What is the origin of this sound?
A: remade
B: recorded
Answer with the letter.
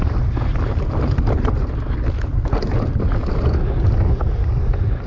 B